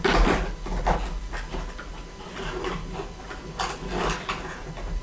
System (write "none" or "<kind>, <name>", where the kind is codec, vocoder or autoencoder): none